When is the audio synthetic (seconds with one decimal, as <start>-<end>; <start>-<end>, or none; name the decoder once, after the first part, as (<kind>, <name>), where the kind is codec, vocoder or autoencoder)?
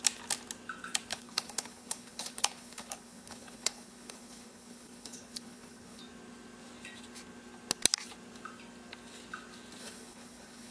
1.1-6.0 (codec, HILCodec); 9.8-10.7